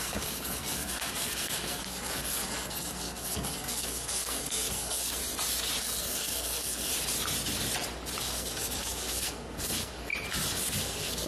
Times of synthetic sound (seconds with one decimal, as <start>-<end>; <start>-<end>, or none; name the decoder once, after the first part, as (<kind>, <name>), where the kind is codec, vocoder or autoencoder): 0.0-5.2 (codec, SNAC); 5.8-6.9; 8.2-10.1; 10.8-11.3